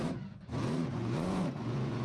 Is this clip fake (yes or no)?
yes